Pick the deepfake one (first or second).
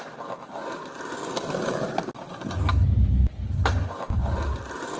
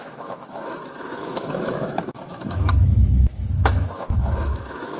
second